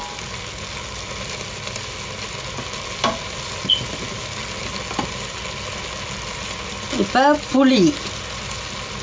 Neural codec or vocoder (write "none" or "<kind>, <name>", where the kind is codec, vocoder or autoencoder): none